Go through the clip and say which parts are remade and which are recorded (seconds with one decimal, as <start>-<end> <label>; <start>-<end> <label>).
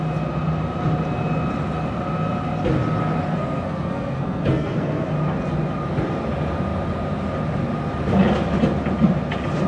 0.0-3.3 recorded; 3.3-5.1 remade; 5.1-9.7 recorded